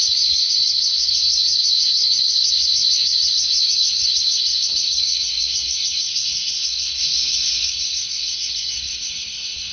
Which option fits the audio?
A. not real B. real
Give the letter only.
A